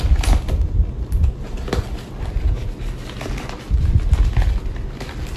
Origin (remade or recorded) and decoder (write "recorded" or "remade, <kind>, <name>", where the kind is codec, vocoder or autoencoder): recorded